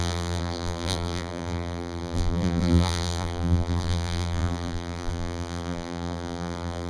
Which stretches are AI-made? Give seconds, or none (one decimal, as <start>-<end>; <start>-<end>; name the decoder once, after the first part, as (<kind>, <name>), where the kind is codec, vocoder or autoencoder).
0.0-6.9 (vocoder, BigVGAN v2)

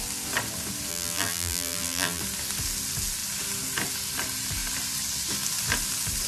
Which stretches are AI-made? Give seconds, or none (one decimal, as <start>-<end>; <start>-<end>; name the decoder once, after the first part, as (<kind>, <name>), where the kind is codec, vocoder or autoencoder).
0.9-2.2 (vocoder, BigVGAN v2)

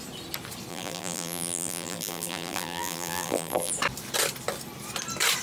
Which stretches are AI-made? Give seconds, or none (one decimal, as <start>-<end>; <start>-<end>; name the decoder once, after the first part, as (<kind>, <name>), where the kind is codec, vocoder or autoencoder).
0.7-3.7 (vocoder, BigVGAN v2)

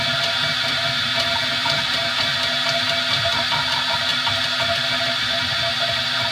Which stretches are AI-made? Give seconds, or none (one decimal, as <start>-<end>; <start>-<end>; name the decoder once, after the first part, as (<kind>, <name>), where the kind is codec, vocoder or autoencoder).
1.6-2.2 (vocoder, BigVGAN v2)

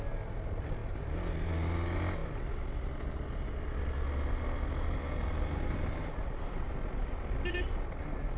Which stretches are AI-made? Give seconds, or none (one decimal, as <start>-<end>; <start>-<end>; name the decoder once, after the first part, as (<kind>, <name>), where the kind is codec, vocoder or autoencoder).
none

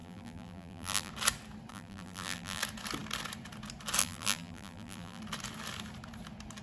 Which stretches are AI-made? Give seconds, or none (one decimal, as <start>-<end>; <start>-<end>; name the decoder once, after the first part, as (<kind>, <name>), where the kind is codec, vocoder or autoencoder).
0.0-1.1 (vocoder, BigVGAN v2); 1.7-2.6; 4.0-5.2